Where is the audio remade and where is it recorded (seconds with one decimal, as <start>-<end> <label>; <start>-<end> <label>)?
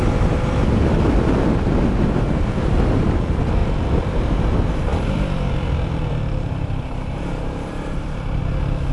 0.0-3.6 recorded; 3.6-4.2 remade; 4.2-4.9 recorded; 4.9-8.4 remade; 8.4-8.9 recorded